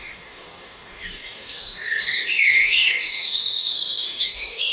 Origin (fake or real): fake